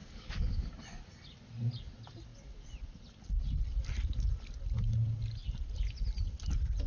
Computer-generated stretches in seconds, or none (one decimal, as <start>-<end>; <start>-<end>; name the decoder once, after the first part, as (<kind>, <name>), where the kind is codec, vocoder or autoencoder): 0.0-0.7 (codec, DAC)